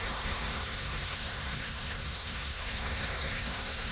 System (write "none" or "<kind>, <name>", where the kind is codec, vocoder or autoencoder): codec, SNAC